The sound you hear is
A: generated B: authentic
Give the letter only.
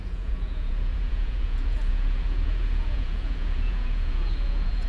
A